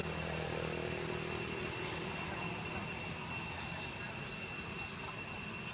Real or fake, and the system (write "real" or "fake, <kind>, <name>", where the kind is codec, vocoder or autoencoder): real